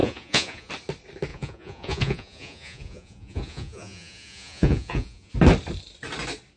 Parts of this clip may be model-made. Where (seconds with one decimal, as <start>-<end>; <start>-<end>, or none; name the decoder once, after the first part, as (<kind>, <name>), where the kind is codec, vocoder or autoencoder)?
0.0-0.7 (vocoder, Vocos); 1.3-5.3